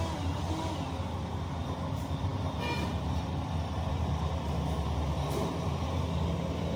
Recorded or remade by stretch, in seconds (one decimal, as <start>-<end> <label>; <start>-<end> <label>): 0.0-6.8 recorded